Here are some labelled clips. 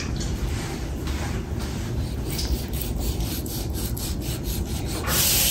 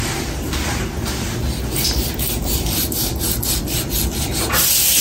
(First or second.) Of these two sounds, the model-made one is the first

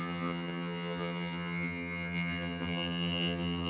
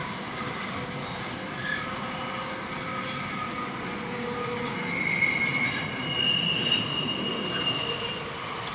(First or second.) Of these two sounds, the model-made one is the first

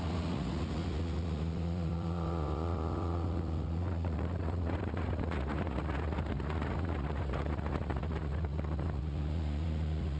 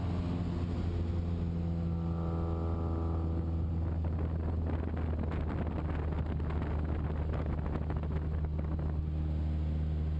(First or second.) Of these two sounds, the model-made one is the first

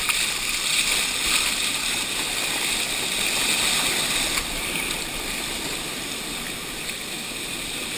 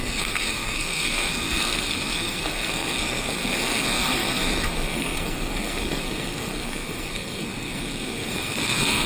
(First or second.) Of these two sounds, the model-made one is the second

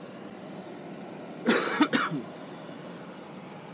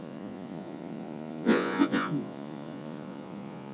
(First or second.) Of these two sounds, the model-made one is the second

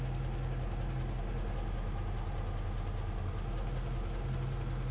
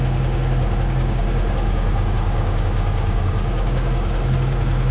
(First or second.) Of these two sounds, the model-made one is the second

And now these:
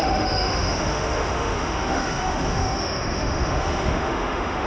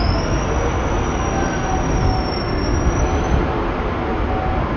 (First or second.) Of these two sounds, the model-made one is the first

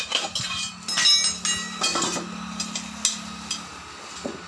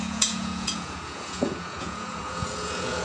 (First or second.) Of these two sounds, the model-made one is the second